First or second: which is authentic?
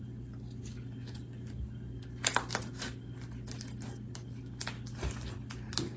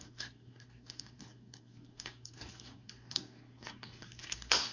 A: first